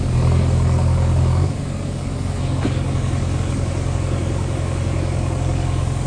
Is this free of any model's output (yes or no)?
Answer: no